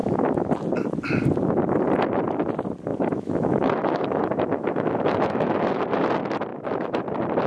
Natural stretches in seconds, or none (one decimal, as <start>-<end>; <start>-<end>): 0.5-2.9; 5.8-6.5; 7.0-7.5